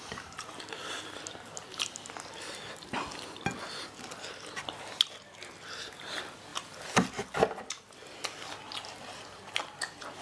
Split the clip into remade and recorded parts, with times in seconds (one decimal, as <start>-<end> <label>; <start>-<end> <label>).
0.0-10.2 recorded